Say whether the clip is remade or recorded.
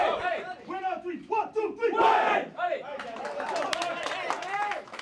recorded